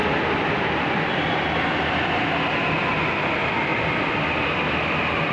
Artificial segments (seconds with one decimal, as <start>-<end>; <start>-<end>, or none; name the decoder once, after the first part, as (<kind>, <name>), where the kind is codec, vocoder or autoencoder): none